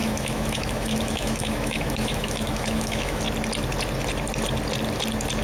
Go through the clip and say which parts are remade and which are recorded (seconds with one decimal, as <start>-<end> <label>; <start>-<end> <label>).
0.0-3.2 remade; 3.2-5.4 recorded